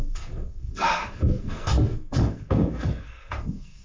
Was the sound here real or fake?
fake